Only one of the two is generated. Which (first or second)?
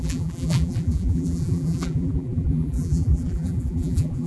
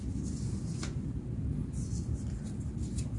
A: first